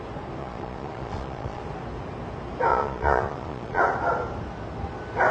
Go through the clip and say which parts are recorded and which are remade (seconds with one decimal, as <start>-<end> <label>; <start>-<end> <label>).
0.0-0.4 recorded; 0.4-1.6 remade; 1.6-2.7 recorded; 2.7-3.8 remade; 3.8-5.3 recorded